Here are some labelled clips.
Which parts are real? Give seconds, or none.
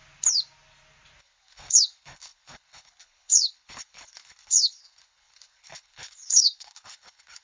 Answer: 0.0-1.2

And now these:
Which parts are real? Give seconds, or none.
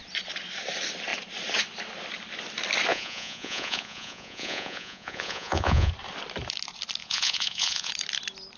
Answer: 0.0-2.9; 5.9-7.0; 7.9-8.6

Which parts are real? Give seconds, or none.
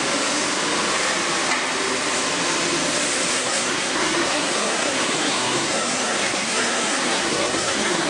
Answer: 0.0-3.3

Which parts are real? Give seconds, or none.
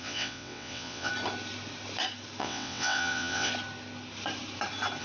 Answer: 1.1-2.4; 3.5-5.0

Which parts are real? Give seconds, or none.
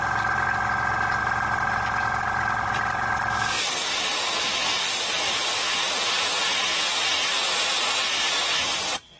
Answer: 0.0-1.2; 3.8-4.7; 6.4-8.0